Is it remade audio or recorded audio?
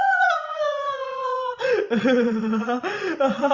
remade